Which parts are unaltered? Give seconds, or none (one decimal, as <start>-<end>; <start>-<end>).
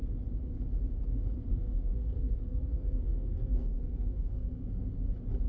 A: 0.0-1.5; 4.8-5.5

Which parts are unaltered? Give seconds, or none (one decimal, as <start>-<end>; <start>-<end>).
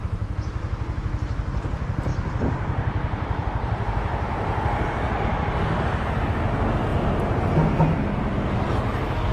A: 0.0-2.1; 5.2-9.3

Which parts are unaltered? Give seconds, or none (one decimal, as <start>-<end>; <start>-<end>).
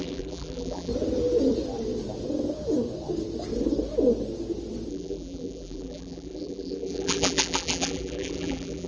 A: 0.9-4.9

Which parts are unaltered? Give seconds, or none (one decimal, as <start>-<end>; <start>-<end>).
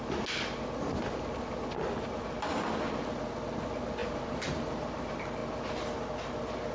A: 0.0-4.0; 4.7-6.7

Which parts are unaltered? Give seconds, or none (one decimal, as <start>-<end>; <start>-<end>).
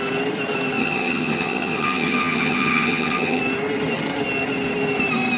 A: 0.0-0.8; 3.4-5.4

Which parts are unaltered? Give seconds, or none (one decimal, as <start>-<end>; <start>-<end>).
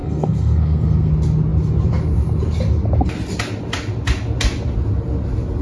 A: 1.1-5.6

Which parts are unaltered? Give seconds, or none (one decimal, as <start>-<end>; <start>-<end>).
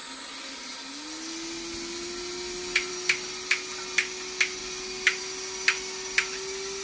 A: 2.9-4.6; 5.2-6.8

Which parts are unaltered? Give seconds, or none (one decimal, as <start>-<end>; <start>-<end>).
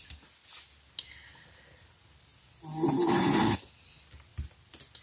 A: 0.0-5.0